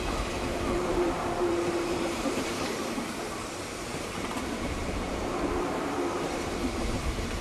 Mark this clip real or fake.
fake